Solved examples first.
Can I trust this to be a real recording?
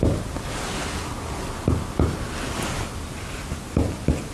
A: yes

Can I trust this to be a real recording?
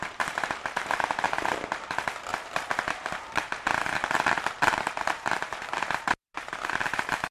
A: no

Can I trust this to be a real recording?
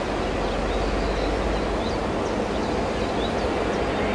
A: yes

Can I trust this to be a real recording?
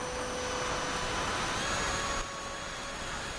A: yes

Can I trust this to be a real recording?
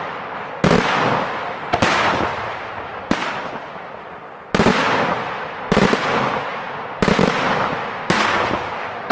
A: yes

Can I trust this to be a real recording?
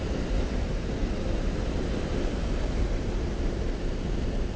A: no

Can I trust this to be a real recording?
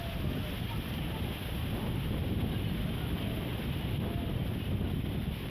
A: yes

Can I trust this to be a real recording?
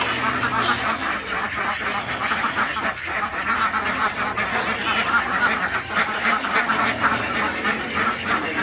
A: yes